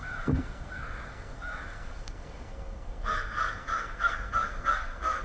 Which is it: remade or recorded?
remade